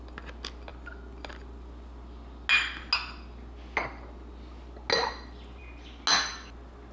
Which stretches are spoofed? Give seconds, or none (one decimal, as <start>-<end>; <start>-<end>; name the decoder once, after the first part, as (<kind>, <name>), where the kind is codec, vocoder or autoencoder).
none